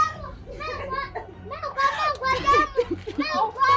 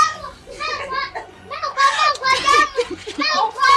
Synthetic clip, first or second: second